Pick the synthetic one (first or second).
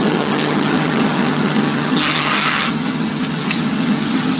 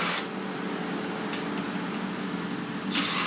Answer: first